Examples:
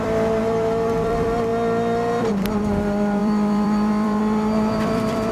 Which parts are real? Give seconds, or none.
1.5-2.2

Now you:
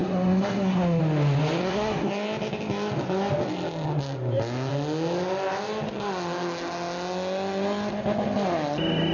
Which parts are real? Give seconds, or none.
1.0-1.6; 2.1-9.1

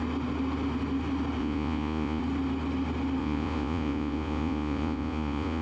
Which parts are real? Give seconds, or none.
0.0-1.4; 2.2-3.2

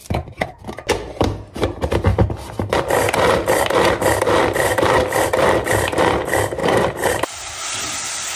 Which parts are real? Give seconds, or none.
2.1-4.2

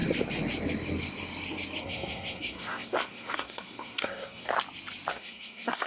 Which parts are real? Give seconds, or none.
0.0-1.8; 4.5-5.1

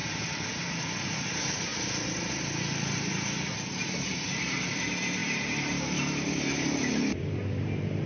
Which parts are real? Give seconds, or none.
1.7-3.5

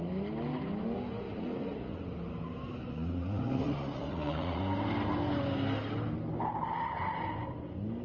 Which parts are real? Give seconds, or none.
0.0-1.3; 2.0-2.8; 4.6-8.0

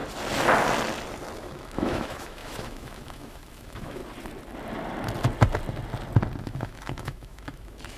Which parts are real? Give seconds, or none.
0.0-1.4; 4.0-6.4